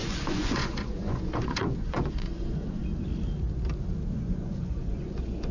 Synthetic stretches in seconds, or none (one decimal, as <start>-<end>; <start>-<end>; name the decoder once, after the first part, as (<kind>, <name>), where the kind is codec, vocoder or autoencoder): 0.0-2.8 (vocoder, Vocos); 4.1-5.5